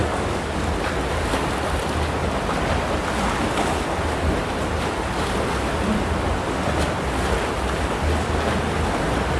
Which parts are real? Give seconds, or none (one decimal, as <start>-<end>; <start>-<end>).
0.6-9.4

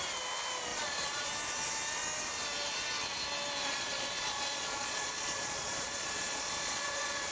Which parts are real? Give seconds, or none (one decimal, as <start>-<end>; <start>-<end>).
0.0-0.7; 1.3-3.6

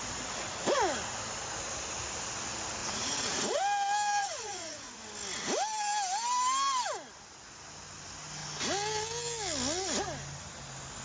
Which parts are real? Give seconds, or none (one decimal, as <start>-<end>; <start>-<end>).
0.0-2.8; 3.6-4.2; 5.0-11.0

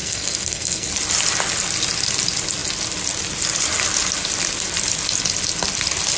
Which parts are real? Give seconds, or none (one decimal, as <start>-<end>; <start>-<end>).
0.9-6.2

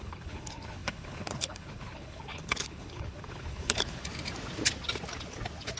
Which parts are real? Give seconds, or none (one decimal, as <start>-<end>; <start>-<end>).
4.1-5.8